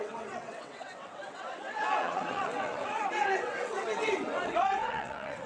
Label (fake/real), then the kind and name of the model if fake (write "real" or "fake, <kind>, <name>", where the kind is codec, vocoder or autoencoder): fake, vocoder, WaveNeXt